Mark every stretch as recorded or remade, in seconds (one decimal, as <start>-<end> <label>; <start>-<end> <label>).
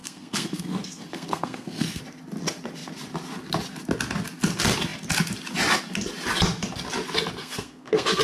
0.0-2.0 remade; 2.0-7.4 recorded; 7.4-8.2 remade